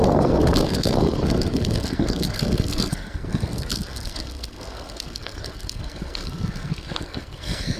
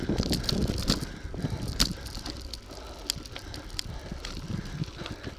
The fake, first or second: first